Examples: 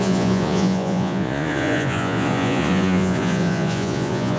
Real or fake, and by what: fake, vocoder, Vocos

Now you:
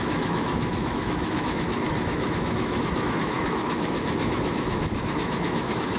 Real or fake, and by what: fake, autoencoder, DAC-VAE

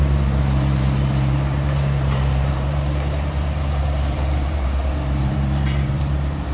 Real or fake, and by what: fake, vocoder, BigVGAN v2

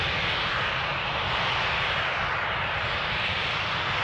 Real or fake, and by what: real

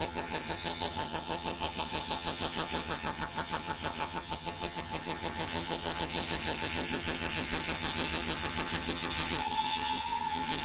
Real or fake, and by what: fake, vocoder, HiFi-GAN